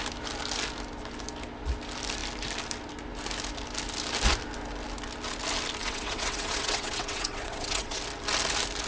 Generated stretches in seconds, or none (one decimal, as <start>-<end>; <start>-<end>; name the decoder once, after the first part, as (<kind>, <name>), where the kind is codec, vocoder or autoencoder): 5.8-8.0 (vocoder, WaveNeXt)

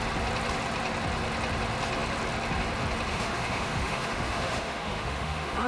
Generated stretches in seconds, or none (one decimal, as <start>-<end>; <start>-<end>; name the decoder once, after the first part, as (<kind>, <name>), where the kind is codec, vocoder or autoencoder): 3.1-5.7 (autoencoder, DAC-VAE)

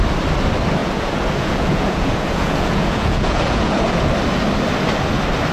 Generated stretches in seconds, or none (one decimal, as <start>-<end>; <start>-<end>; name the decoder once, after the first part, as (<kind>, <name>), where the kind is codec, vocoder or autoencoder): 0.8-4.1 (vocoder, Vocos)

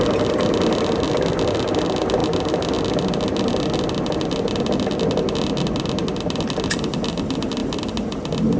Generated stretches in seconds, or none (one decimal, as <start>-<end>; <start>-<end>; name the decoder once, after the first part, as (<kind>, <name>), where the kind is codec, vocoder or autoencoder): none

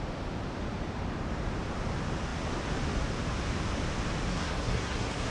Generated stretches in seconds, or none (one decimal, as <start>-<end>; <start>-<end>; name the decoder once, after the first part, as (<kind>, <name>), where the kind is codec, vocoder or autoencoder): 4.3-5.3 (codec, SNAC)

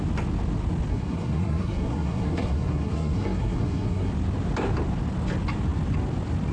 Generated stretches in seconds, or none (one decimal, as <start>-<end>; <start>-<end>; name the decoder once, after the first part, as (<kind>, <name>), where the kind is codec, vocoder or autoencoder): 0.9-4.1 (codec, SNAC)

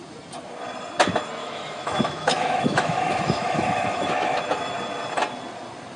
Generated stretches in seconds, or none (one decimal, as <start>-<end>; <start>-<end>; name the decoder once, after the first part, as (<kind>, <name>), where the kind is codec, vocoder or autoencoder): 1.4-4.4 (autoencoder, DAC-VAE)

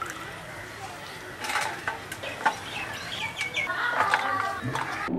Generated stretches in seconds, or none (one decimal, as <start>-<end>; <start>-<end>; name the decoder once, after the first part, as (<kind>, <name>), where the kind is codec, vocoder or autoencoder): none